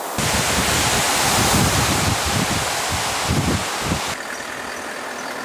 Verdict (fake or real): real